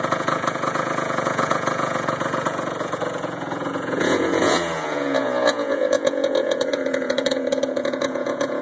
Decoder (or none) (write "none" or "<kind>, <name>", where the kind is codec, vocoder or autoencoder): vocoder, Vocos